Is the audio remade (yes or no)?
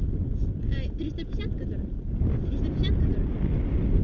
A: no